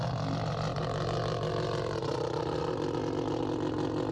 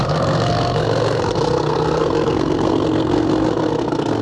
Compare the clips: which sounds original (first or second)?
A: first